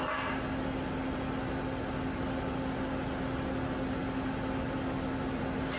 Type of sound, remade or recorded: recorded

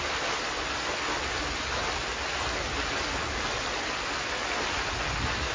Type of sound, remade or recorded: recorded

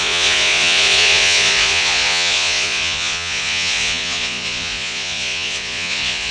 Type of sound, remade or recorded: remade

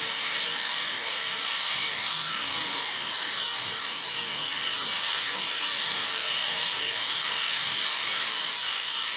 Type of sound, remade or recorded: remade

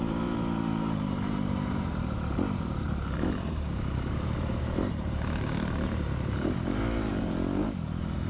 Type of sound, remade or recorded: remade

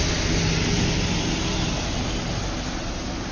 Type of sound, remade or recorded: recorded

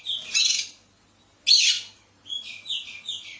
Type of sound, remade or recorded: recorded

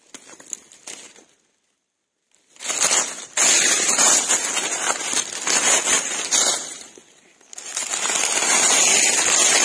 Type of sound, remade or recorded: recorded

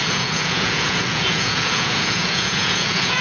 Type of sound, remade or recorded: remade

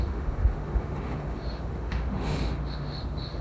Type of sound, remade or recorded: remade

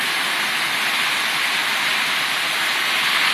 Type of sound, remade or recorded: recorded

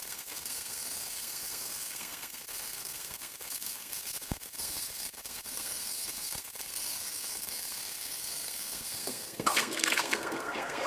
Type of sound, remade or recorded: remade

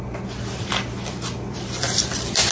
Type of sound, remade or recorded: remade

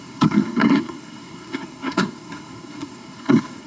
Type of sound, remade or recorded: remade